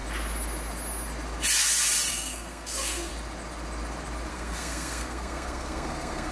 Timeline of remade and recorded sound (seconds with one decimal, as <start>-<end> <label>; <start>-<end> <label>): 0.0-2.1 recorded; 2.1-3.1 remade; 3.1-4.3 recorded; 4.3-6.3 remade